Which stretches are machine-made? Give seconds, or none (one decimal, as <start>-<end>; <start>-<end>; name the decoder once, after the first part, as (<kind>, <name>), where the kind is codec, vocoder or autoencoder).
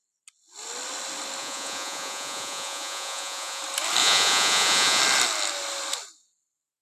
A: 1.4-3.6 (vocoder, Vocos); 4.0-5.0